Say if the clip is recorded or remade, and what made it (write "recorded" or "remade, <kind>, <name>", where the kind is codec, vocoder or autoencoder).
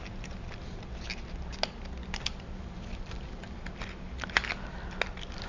recorded